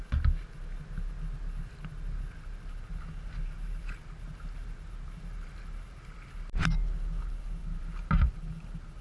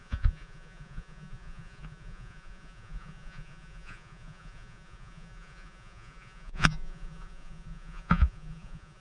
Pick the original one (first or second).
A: first